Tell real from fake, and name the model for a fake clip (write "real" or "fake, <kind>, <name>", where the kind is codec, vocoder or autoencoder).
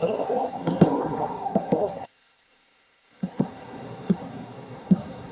fake, codec, SNAC